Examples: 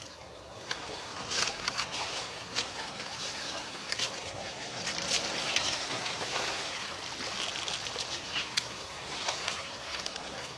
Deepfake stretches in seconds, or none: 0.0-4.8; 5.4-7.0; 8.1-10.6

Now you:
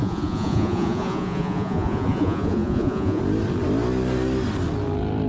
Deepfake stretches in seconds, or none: 0.0-3.2

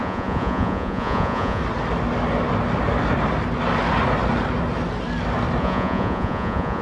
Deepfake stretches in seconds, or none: 0.0-1.6; 5.6-6.8

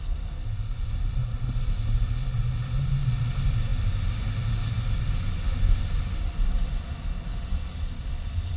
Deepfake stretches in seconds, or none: none

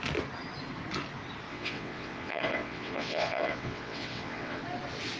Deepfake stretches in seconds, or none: 1.5-4.6

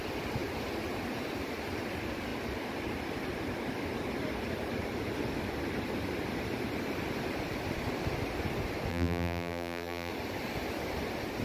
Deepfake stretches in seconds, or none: 8.9-10.1

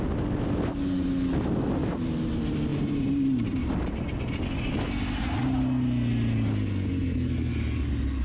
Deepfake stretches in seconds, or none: 1.8-2.3; 2.7-3.7